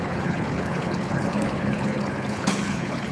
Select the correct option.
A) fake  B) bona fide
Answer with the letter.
A